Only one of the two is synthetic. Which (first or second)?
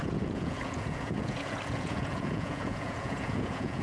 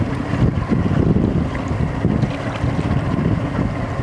first